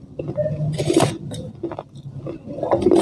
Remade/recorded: recorded